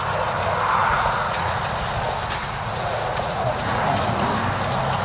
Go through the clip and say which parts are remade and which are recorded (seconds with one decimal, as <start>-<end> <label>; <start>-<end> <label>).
0.0-0.8 recorded; 0.8-1.6 remade; 1.6-2.4 recorded; 2.4-4.3 remade; 4.3-5.0 recorded